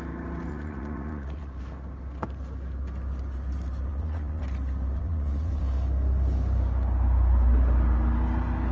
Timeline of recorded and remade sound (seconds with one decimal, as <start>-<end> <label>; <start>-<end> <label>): 0.0-0.5 recorded; 0.5-1.6 remade; 1.6-3.9 recorded; 3.9-4.4 remade; 4.4-5.0 recorded; 5.0-5.6 remade; 5.6-8.7 recorded

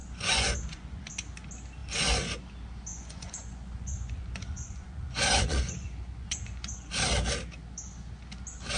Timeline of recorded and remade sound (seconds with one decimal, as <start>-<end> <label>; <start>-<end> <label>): 0.0-1.1 remade; 1.1-2.9 recorded; 2.9-6.9 remade; 6.9-8.8 recorded

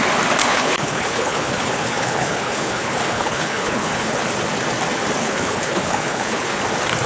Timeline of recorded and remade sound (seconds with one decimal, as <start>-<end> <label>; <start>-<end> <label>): 0.0-0.4 recorded; 0.4-4.2 remade; 4.2-5.2 recorded; 5.2-6.6 remade; 6.6-7.1 recorded

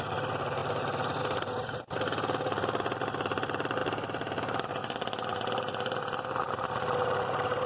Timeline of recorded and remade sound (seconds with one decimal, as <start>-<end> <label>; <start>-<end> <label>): 0.0-7.7 recorded

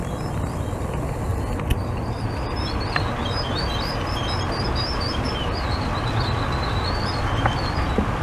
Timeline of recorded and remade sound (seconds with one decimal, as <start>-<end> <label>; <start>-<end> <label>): 0.0-8.2 recorded

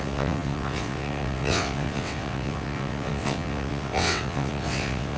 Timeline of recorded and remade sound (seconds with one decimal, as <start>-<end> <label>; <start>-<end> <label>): 0.0-5.2 remade

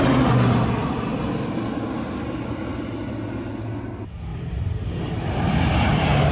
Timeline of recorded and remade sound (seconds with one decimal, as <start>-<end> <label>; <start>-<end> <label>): 0.0-4.3 recorded; 4.3-6.3 remade